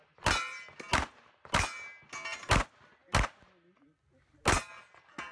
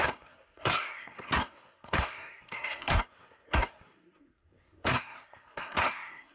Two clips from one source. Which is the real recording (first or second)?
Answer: first